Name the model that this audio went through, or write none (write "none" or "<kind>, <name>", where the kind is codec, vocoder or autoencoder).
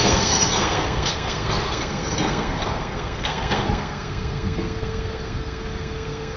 codec, SNAC